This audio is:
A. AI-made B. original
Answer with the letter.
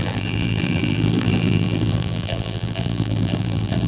A